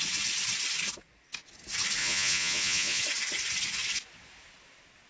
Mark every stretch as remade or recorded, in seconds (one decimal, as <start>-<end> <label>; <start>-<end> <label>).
0.0-2.0 recorded; 2.0-3.0 remade; 3.0-5.1 recorded